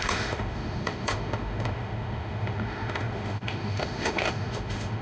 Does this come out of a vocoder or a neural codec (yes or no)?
yes